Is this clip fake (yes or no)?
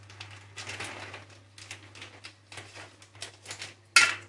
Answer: no